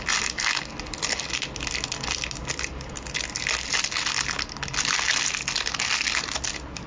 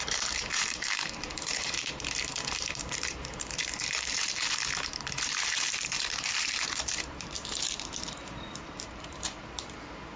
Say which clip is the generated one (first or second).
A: second